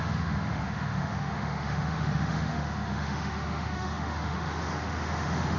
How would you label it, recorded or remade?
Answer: remade